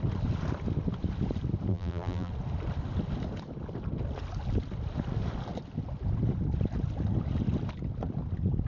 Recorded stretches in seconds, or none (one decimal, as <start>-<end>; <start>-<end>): 0.0-1.7; 2.3-8.7